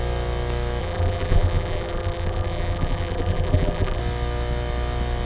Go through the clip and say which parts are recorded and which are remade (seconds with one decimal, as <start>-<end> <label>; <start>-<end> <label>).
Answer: 0.0-0.8 recorded; 0.8-4.0 remade; 4.0-5.3 recorded